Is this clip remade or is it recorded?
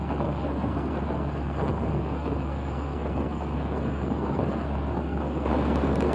remade